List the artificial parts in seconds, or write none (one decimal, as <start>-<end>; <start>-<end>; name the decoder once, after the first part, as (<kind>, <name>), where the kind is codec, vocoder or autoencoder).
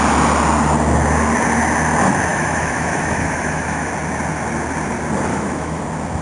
2.3-3.9 (autoencoder, DAC-VAE); 5.3-5.8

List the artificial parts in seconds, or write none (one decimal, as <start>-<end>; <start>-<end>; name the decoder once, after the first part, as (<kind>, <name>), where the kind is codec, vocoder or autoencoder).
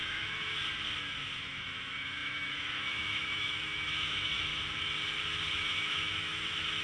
0.0-0.5 (autoencoder, DAC-VAE); 1.4-4.5; 5.5-6.8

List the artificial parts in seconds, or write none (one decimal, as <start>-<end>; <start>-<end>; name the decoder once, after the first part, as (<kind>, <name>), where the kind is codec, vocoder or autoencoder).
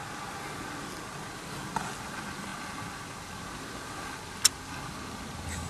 none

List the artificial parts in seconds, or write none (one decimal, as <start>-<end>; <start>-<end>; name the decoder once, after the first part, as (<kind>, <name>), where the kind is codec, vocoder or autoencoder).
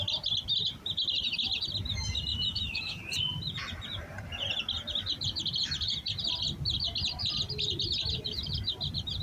2.3-3.0 (autoencoder, DAC-VAE)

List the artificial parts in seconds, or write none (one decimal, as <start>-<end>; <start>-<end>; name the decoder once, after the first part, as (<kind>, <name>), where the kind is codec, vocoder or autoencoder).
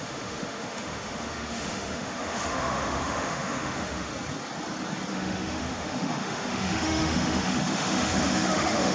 0.0-4.1 (autoencoder, DAC-VAE); 5.1-8.9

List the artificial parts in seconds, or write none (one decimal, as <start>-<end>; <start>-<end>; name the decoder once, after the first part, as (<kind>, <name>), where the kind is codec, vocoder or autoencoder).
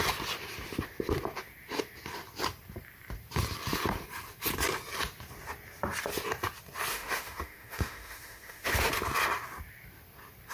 6.9-8.9 (autoencoder, DAC-VAE)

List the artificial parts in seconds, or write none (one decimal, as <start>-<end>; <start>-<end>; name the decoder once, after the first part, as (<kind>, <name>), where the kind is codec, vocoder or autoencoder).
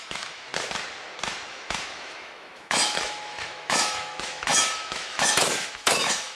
0.0-0.5 (autoencoder, DAC-VAE); 1.5-6.4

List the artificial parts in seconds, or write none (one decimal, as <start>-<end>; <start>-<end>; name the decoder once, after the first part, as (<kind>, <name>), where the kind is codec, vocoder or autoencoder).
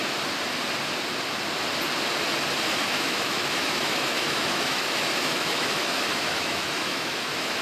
2.8-7.6 (autoencoder, DAC-VAE)